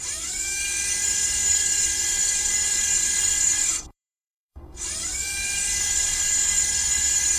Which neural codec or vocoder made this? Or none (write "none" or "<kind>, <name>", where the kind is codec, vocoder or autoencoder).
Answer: codec, DAC